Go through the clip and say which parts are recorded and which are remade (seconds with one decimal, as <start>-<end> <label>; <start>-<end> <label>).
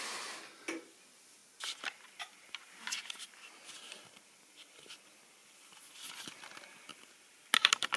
0.0-8.0 recorded